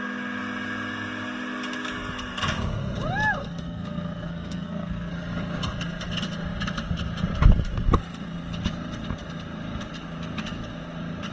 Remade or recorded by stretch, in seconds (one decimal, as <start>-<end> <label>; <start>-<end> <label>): 0.0-3.4 recorded; 3.4-5.1 remade; 5.1-11.3 recorded